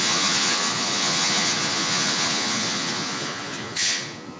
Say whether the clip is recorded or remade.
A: remade